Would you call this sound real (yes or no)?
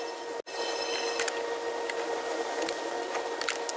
yes